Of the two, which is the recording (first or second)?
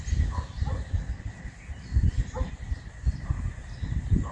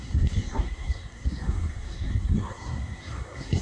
first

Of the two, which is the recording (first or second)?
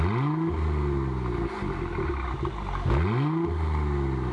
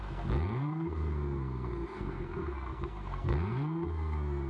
first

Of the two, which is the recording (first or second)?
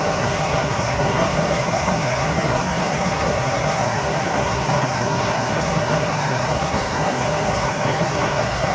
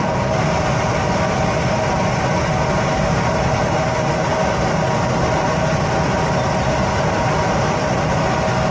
second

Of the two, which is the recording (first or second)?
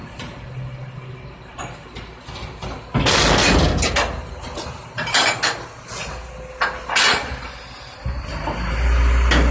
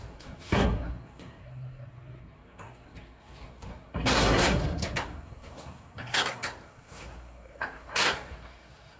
first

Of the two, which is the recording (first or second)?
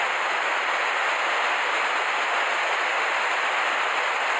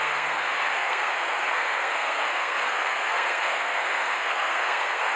first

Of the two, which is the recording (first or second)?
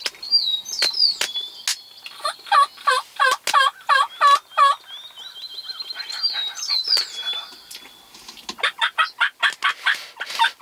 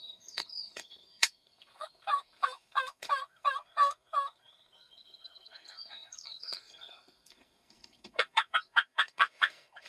first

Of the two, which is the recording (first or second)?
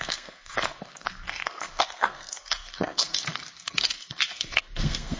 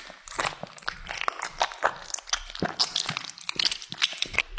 second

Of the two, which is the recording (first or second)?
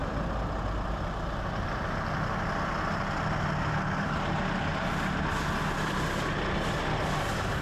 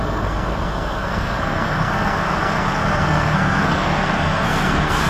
first